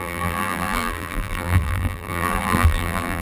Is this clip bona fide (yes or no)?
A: no